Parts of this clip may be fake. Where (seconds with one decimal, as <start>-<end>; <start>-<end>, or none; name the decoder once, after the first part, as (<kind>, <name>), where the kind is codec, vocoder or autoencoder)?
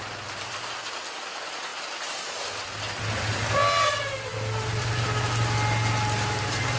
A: none